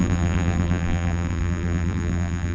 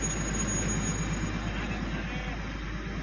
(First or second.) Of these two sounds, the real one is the second